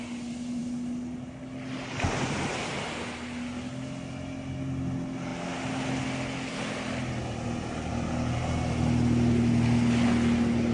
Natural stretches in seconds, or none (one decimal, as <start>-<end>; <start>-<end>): 0.0-10.7